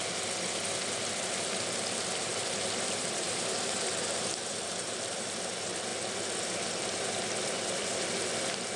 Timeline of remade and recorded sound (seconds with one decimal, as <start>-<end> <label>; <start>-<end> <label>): 0.0-2.3 recorded; 2.3-5.5 remade; 5.5-5.9 recorded; 5.9-6.5 remade; 6.5-8.8 recorded